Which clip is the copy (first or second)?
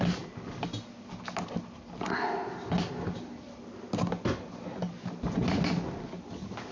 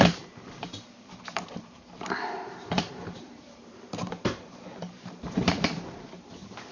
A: second